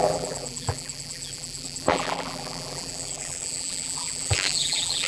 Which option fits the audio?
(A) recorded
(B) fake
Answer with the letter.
B